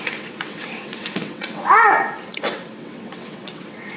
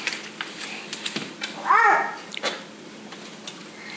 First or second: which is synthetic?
first